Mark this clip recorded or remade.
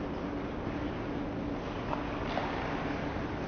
recorded